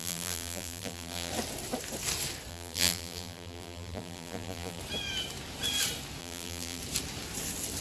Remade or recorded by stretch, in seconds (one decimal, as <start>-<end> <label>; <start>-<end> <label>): 0.0-1.3 remade; 1.3-2.5 recorded; 2.5-4.8 remade; 4.8-6.2 recorded; 6.2-6.8 remade; 6.8-7.8 recorded